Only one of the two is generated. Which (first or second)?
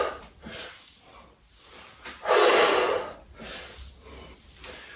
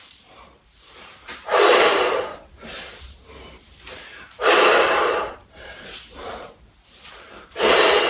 second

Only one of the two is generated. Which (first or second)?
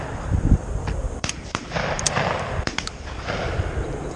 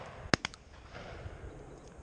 first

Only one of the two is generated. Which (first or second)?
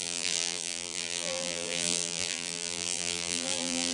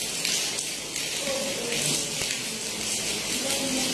first